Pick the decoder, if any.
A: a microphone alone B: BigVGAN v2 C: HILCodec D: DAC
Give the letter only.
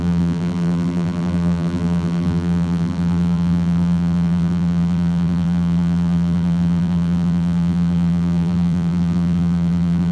B